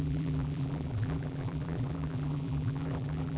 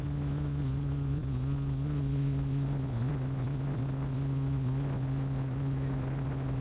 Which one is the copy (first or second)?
first